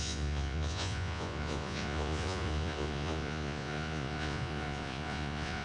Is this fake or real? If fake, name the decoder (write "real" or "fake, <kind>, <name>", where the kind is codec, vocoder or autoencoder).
fake, vocoder, Vocos